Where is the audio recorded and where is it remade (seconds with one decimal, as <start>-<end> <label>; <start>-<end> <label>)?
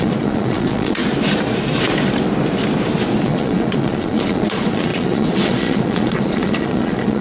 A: 0.0-1.0 remade; 1.0-3.2 recorded; 3.2-7.2 remade